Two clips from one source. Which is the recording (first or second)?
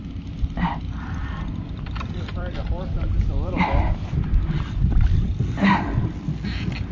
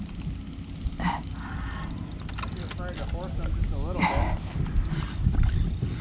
second